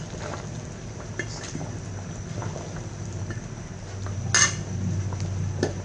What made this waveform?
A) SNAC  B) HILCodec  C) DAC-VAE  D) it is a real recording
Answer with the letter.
D